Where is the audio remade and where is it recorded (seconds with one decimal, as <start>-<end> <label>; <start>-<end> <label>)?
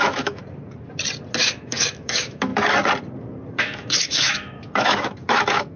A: 0.0-0.4 remade; 0.4-1.4 recorded; 1.4-2.5 remade; 2.5-3.6 recorded; 3.6-5.8 remade